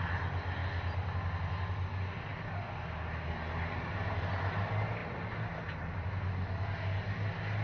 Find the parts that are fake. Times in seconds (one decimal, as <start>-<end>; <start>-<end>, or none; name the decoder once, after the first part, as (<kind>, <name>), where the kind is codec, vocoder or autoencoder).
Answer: none